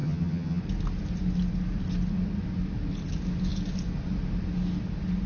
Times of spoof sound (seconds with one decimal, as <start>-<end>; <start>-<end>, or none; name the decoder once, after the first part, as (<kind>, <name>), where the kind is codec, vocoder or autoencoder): 0.0-0.6 (vocoder, HiFi-GAN)